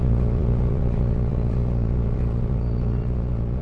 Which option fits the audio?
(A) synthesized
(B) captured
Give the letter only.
A